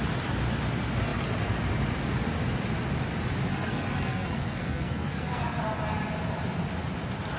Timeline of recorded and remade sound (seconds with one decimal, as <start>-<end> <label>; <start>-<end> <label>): 0.0-3.5 recorded; 3.5-5.6 remade; 5.6-7.4 recorded